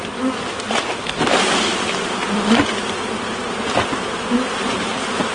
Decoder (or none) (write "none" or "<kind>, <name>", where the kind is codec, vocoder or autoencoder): none